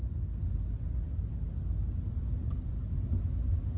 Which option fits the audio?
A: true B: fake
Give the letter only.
A